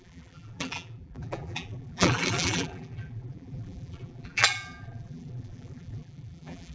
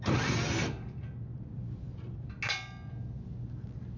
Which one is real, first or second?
second